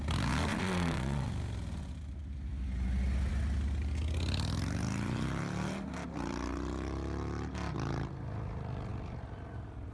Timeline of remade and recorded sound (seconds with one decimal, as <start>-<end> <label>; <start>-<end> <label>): 0.0-0.5 recorded; 0.5-1.3 remade; 1.3-9.9 recorded